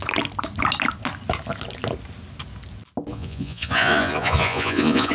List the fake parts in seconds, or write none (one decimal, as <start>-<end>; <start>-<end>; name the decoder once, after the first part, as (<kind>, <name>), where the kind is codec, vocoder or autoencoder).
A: 3.1-5.1 (vocoder, Vocos)